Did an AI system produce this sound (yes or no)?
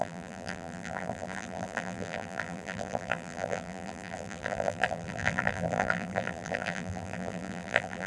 yes